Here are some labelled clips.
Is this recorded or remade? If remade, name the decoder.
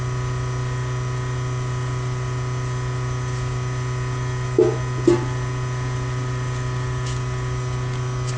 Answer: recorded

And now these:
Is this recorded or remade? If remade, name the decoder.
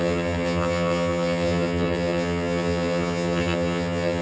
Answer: remade, vocoder, HiFi-GAN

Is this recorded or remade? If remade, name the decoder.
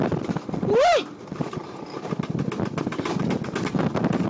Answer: recorded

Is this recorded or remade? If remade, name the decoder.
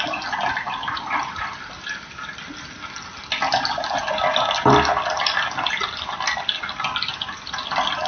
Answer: recorded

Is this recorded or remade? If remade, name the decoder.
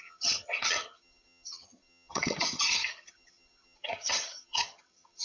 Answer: remade, vocoder, HiFi-GAN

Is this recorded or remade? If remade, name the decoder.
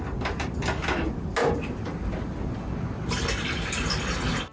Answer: recorded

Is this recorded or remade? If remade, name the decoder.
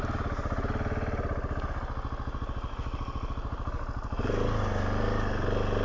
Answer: recorded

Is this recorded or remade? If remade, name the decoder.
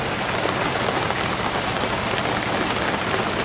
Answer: recorded